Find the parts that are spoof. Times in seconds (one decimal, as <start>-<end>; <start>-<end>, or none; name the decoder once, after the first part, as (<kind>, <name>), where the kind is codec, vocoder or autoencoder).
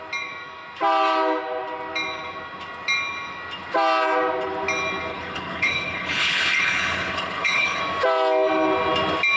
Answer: 5.1-7.8 (codec, HILCodec)